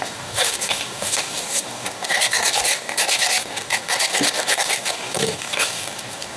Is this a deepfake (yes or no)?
yes